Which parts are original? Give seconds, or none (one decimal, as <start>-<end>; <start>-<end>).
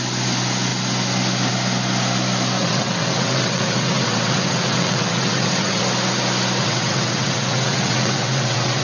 0.0-2.6; 5.8-6.6